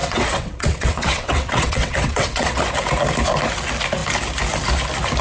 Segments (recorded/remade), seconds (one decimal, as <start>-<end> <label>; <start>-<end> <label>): 0.0-2.6 remade; 2.6-5.2 recorded